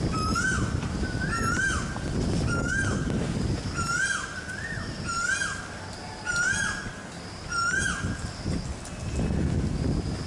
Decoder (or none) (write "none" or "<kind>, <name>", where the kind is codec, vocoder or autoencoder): none